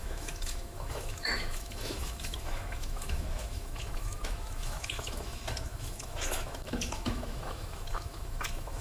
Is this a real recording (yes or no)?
no